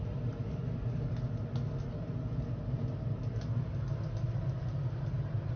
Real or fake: real